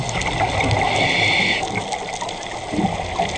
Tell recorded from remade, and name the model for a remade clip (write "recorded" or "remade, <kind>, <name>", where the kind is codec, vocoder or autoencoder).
recorded